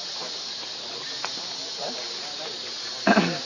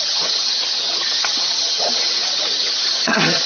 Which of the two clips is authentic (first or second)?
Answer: first